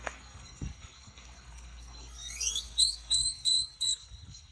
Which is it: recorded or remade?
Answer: remade